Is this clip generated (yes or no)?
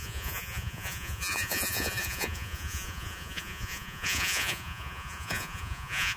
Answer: yes